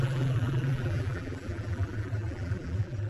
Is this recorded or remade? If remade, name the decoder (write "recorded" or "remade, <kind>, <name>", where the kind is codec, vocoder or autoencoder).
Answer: remade, vocoder, BigVGAN v2